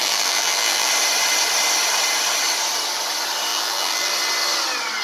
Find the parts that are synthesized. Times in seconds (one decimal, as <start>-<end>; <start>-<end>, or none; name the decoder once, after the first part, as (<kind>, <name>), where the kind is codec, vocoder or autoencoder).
0.0-0.9 (vocoder, BigVGAN v2); 3.5-4.1